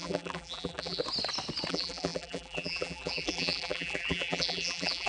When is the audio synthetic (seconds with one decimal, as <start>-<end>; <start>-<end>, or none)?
0.0-1.0; 1.7-5.1